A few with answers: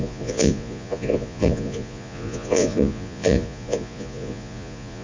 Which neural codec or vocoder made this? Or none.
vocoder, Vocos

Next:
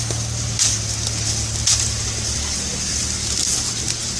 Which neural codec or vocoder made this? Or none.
none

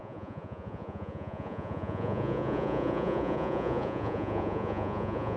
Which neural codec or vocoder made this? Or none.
vocoder, Vocos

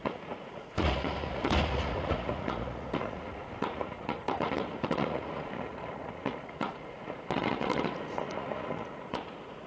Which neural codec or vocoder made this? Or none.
vocoder, Vocos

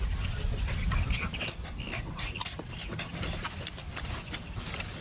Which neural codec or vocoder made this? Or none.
none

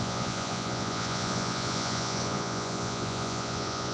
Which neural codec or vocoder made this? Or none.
vocoder, Vocos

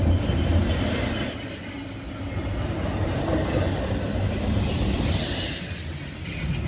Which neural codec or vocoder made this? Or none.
none